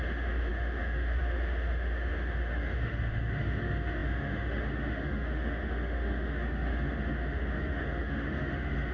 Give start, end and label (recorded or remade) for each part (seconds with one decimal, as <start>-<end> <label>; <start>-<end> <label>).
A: 0.0-8.9 remade